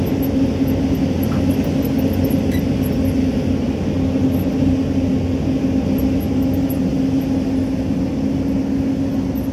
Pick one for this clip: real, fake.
real